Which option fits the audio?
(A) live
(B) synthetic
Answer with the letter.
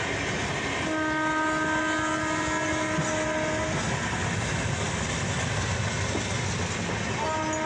A